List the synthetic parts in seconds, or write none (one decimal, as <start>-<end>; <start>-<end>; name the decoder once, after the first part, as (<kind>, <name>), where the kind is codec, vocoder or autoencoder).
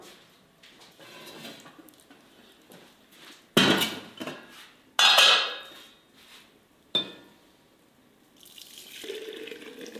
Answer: none